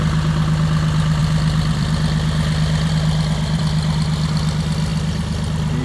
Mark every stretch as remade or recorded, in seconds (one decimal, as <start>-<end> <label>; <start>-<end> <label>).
0.0-1.2 recorded; 1.2-2.9 remade; 2.9-5.8 recorded